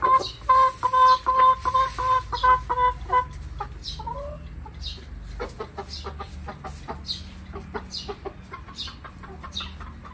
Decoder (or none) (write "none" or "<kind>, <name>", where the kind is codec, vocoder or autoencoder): none